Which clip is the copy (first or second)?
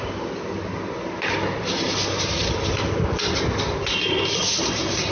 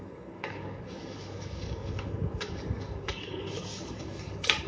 second